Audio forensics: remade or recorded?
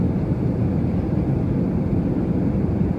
recorded